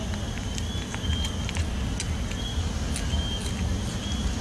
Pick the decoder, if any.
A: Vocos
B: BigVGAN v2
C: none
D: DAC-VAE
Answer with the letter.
C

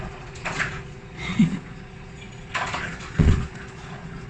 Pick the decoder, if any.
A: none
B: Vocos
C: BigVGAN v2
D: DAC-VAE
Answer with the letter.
B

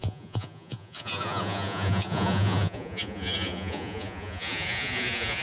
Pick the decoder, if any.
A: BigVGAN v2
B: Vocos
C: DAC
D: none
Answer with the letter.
B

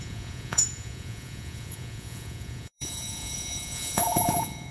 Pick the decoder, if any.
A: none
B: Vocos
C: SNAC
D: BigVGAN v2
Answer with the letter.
B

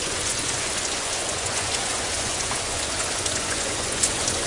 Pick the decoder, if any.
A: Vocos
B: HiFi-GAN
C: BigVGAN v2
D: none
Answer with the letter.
A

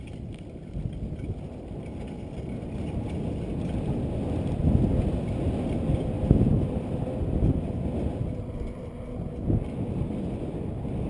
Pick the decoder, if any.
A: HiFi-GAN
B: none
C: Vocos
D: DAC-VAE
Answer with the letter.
B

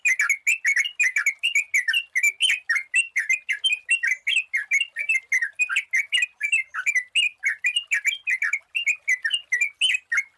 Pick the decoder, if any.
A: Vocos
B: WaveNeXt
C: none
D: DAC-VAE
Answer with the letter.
C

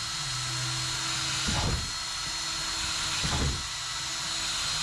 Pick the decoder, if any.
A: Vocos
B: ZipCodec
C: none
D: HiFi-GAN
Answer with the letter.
C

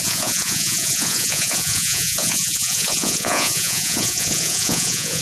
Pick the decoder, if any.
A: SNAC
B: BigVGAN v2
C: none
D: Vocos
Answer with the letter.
D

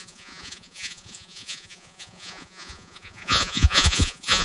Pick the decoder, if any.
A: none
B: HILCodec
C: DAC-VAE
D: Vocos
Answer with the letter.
D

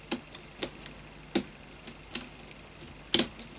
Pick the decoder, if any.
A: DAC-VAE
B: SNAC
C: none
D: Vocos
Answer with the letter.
C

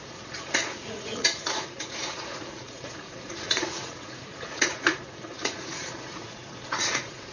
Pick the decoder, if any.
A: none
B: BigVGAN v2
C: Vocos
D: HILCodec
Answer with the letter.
C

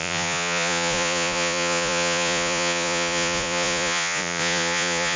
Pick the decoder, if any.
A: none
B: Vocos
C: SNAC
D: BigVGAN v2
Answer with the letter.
B